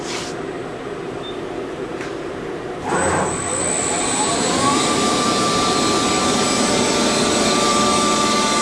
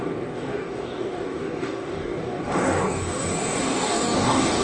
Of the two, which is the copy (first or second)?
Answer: second